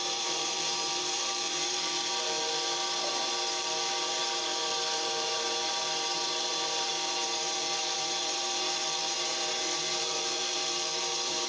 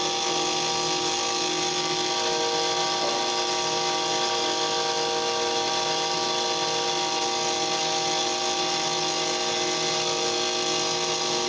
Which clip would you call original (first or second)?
second